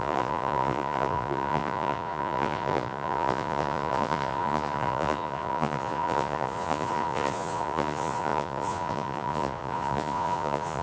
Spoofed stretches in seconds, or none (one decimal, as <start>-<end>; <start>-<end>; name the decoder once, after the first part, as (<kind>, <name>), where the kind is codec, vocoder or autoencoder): 0.0-10.8 (vocoder, Vocos)